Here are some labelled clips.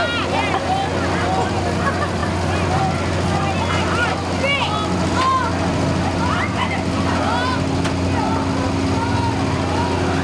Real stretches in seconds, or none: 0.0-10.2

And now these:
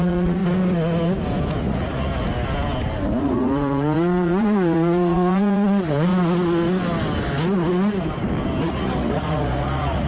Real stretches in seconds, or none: 0.4-1.6; 2.1-3.2; 6.1-8.6

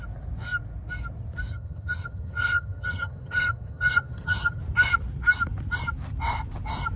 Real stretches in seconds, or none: 0.0-1.5; 4.6-7.0